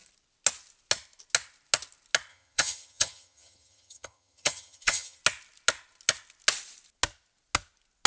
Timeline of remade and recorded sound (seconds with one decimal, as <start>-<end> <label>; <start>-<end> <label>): 0.0-2.3 recorded; 2.3-5.2 remade; 5.2-8.1 recorded